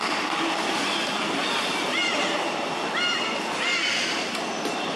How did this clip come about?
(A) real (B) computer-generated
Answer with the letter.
A